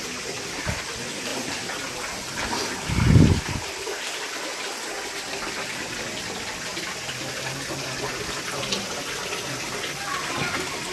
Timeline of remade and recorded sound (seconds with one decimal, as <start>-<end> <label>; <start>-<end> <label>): 0.0-10.9 recorded